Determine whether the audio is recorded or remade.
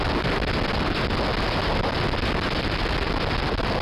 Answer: recorded